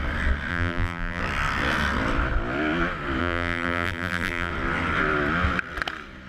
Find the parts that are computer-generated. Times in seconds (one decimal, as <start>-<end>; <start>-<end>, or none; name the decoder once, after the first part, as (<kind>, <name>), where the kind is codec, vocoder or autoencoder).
0.5-1.2 (vocoder, BigVGAN v2); 3.2-4.5